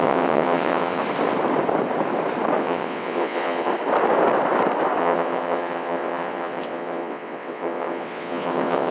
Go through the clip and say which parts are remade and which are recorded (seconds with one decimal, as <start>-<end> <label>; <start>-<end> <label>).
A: 0.0-1.0 remade; 1.0-2.6 recorded; 2.6-3.7 remade; 3.7-5.0 recorded; 5.0-8.9 remade